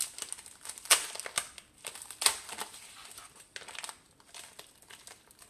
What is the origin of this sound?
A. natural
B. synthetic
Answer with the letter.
A